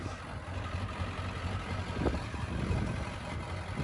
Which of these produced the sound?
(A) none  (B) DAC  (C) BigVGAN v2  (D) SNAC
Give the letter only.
A